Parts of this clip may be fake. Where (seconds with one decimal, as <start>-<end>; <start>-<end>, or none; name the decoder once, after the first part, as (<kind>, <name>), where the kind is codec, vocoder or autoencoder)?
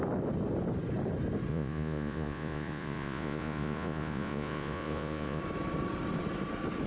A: 1.5-5.4 (vocoder, Vocos)